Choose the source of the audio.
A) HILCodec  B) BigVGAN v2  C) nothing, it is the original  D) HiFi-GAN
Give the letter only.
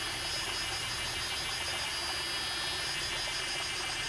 C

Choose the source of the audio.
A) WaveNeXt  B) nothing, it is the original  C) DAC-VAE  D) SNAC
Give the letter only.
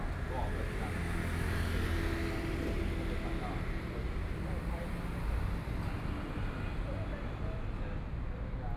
B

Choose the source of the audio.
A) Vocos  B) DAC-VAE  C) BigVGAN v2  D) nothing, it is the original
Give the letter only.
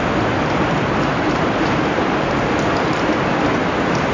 D